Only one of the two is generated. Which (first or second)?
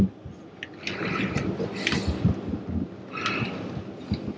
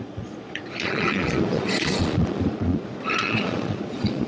second